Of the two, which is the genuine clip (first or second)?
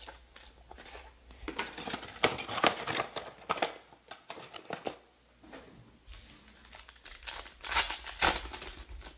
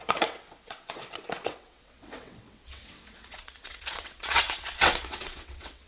first